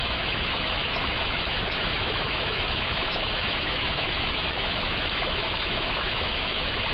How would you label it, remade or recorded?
remade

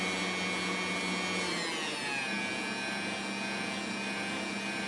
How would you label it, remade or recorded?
recorded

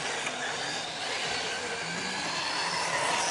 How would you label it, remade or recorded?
recorded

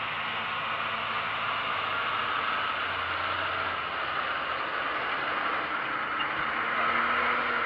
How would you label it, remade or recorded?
recorded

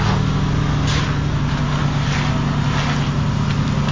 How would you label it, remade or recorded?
recorded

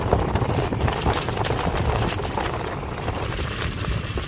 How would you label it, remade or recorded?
recorded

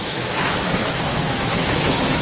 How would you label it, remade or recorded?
remade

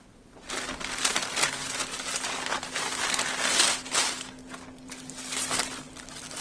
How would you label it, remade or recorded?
recorded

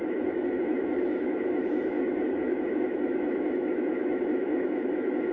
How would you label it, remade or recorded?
remade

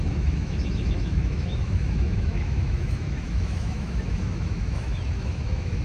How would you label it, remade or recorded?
remade